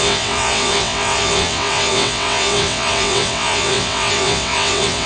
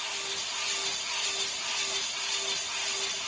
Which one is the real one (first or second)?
second